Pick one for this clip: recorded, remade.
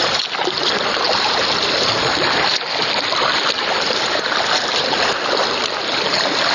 recorded